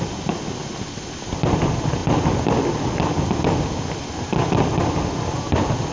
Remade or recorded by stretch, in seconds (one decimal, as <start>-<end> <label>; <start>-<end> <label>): 0.0-5.9 recorded